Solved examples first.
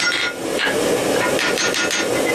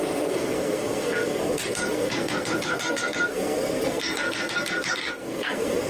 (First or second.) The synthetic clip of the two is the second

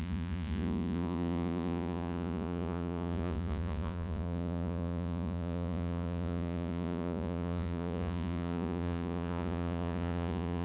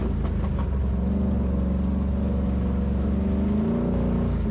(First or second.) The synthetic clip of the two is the first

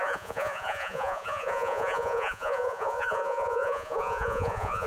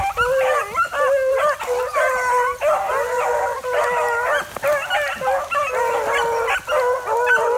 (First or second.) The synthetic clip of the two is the first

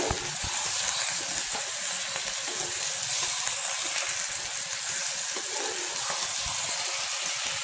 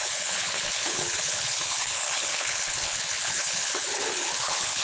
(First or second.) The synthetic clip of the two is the second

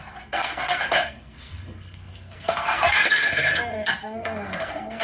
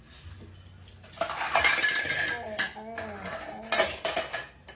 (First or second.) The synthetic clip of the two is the first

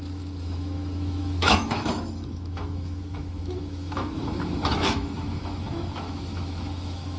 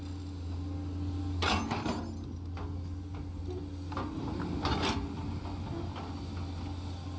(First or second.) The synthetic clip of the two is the first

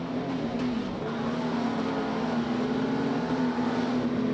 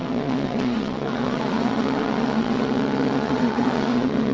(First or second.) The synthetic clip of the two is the second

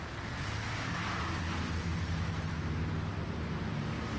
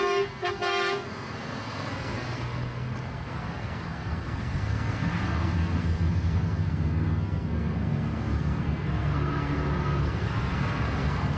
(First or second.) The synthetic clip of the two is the second